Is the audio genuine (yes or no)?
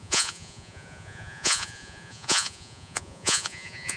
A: no